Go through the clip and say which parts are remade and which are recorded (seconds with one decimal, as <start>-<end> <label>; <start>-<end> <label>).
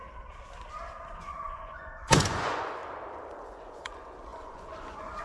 0.0-1.2 recorded; 1.2-2.8 remade; 2.8-3.3 recorded; 3.3-5.2 remade